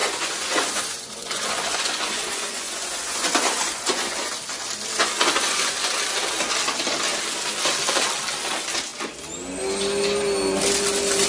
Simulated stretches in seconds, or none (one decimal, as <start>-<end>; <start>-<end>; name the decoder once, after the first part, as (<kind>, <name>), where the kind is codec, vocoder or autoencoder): 0.0-4.3 (vocoder, Vocos); 5.0-5.9